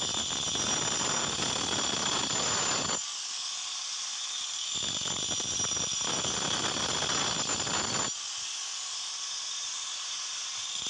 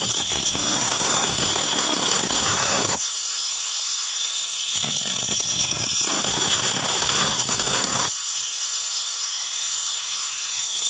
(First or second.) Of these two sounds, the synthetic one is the second